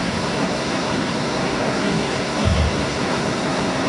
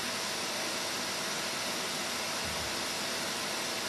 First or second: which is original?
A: second